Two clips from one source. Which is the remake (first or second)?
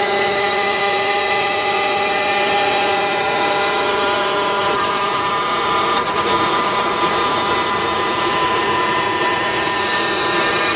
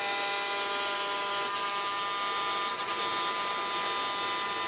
first